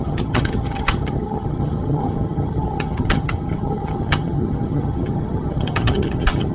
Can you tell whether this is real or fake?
fake